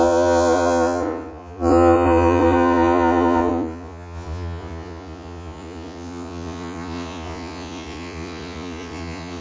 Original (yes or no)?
no